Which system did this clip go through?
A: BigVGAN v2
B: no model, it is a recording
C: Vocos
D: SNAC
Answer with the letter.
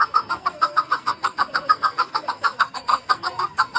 D